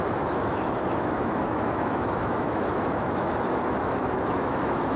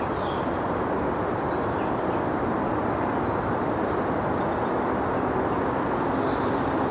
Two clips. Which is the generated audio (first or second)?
first